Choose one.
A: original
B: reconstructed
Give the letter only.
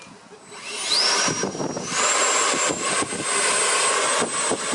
A